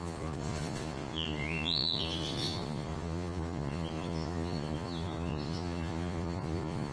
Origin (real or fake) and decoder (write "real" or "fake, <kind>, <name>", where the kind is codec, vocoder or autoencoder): fake, vocoder, Vocos